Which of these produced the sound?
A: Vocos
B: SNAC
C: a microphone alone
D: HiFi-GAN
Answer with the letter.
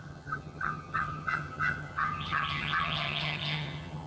D